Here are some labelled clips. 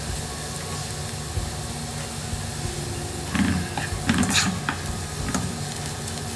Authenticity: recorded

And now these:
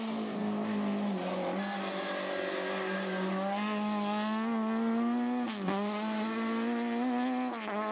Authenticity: recorded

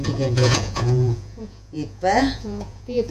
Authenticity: remade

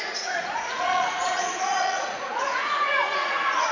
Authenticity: remade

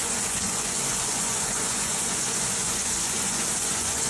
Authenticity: remade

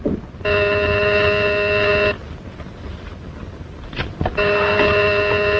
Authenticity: recorded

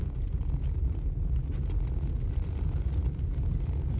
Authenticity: recorded